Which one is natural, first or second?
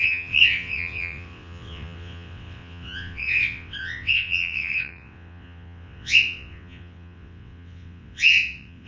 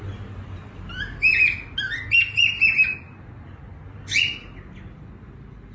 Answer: second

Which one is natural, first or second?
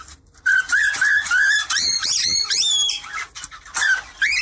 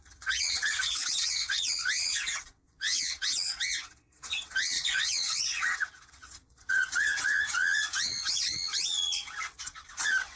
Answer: first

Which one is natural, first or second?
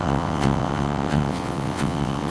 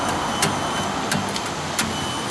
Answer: second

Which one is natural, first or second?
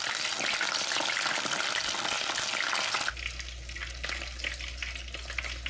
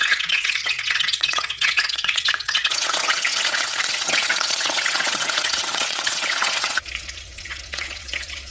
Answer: first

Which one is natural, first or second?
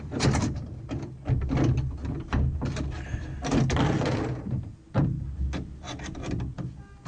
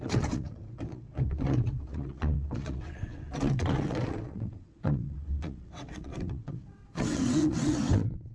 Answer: first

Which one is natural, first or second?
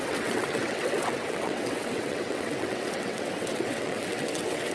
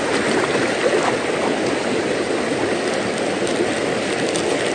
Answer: second